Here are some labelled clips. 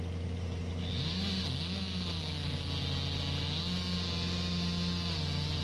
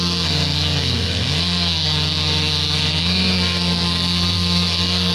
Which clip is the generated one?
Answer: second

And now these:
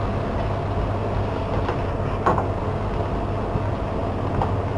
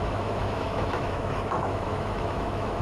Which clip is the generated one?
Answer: second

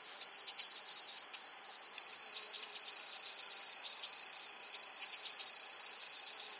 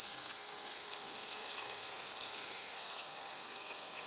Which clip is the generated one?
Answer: second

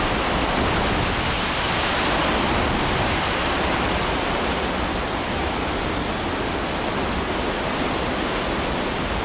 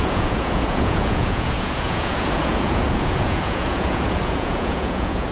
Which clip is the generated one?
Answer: second